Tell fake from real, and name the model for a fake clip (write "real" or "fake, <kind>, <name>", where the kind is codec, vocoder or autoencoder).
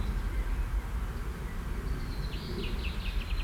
real